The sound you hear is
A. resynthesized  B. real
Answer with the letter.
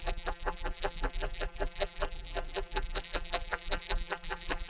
A